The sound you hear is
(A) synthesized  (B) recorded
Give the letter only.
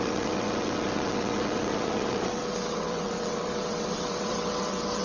A